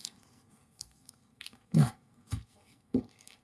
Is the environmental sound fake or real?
fake